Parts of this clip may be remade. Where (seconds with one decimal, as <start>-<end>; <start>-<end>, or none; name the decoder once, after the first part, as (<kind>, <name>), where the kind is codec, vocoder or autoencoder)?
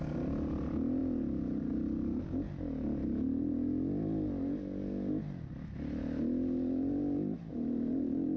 none